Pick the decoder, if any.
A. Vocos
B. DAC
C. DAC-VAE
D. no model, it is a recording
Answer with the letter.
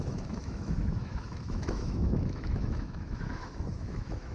C